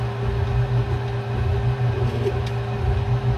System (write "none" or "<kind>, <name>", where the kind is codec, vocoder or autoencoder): none